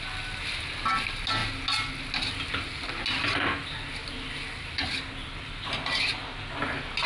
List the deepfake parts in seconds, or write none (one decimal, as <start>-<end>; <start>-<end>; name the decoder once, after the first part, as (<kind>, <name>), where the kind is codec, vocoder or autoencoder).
none